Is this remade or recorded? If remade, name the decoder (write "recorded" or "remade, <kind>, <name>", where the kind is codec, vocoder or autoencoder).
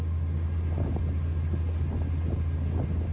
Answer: recorded